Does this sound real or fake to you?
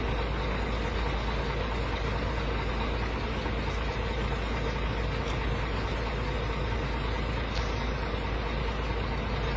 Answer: real